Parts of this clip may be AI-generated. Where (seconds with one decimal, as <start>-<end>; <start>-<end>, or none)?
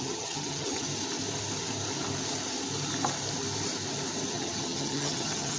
0.0-0.9; 4.3-5.6